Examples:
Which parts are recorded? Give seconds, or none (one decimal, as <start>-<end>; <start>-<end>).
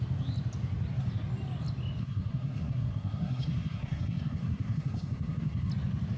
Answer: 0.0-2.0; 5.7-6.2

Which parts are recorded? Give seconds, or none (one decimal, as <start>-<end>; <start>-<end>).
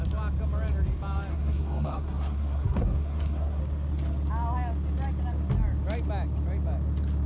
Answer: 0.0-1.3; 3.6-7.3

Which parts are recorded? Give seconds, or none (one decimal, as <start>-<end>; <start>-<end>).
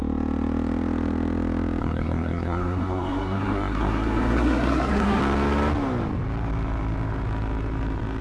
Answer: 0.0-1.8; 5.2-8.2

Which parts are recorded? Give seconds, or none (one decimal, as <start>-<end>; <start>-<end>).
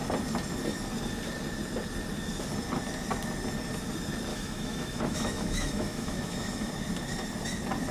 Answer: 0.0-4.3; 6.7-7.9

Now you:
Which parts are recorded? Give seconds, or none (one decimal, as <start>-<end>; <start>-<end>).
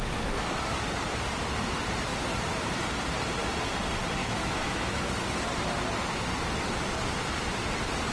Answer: 0.0-4.2; 5.0-8.1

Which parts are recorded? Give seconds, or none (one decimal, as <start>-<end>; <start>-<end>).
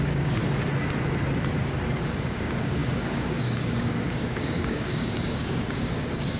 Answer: 0.4-2.2